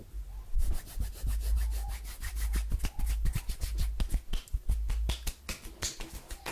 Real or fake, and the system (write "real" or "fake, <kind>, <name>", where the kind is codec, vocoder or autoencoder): real